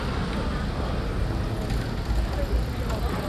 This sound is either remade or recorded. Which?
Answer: recorded